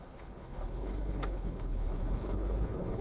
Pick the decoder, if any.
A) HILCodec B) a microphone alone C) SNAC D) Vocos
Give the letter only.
A